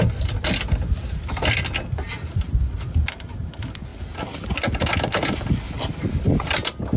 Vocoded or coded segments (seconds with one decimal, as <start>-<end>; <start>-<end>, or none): none